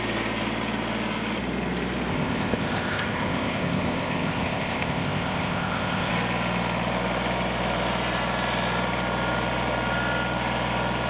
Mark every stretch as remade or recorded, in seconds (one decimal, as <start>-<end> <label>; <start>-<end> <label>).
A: 0.0-2.1 recorded; 2.1-6.1 remade; 6.1-11.1 recorded